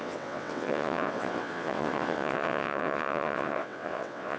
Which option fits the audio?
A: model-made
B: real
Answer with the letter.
A